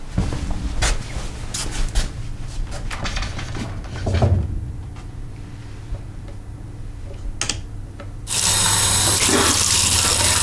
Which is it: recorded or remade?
recorded